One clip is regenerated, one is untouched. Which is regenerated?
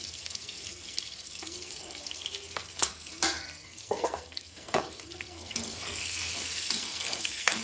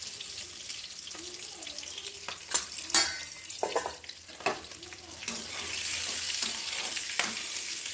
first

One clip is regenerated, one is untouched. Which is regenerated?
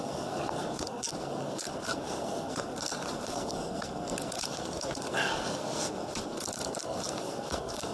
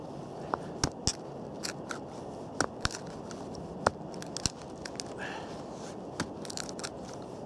first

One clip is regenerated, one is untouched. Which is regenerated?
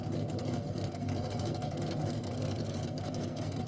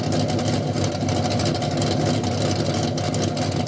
first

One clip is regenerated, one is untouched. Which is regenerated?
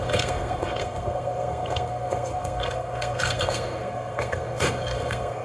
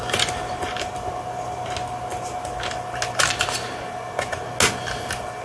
first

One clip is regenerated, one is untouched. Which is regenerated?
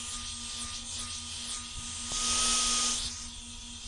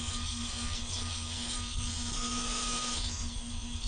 second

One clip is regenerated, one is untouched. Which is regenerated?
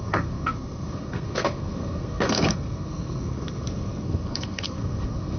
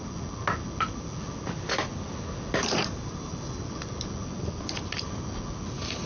first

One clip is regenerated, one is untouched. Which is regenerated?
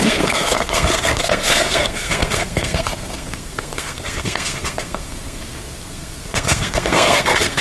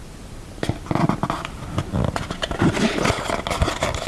first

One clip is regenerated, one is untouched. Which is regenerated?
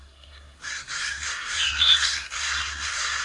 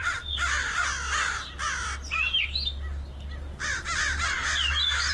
first